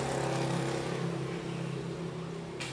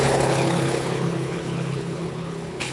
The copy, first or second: second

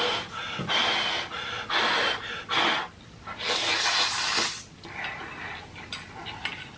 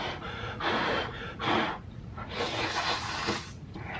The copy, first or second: second